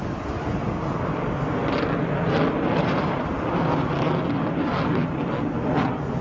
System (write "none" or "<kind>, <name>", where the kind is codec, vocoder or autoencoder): none